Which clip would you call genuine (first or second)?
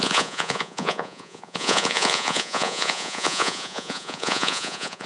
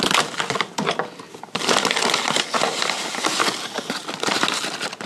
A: second